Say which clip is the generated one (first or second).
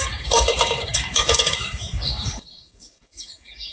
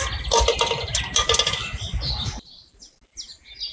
first